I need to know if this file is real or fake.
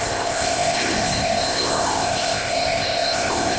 fake